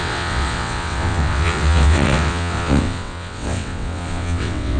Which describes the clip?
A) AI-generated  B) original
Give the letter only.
A